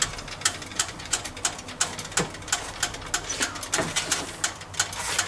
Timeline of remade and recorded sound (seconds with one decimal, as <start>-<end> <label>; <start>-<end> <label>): 0.0-0.7 recorded; 0.7-1.3 remade; 1.3-5.3 recorded